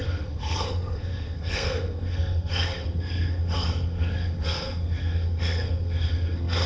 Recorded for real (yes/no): no